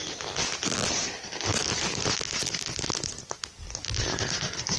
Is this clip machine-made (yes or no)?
yes